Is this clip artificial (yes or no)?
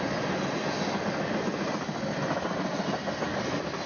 no